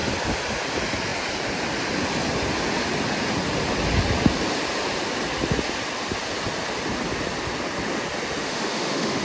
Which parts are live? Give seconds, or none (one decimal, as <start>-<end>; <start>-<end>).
0.0-8.4